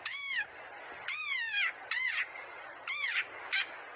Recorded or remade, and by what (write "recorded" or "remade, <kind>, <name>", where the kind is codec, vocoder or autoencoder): recorded